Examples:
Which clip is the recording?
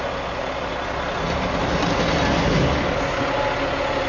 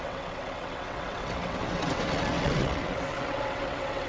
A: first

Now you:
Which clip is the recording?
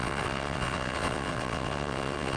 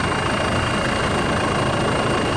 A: second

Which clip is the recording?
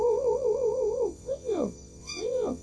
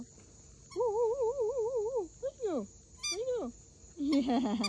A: second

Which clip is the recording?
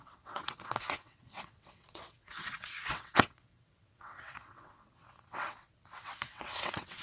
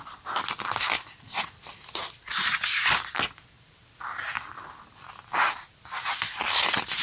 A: second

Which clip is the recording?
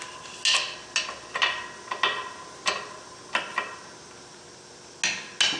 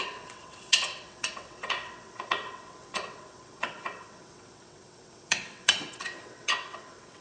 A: first